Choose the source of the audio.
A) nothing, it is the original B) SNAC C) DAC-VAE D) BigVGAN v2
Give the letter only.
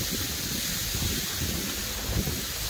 A